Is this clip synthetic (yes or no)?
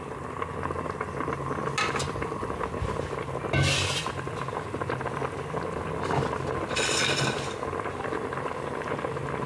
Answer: no